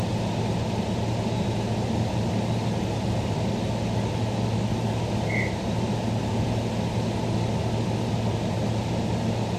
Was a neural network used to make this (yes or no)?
no